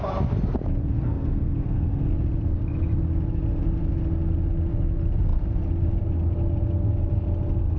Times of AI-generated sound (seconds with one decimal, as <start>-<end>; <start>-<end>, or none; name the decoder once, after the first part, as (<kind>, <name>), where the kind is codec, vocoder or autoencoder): 0.8-2.1 (codec, SNAC)